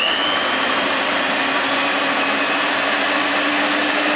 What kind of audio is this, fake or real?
real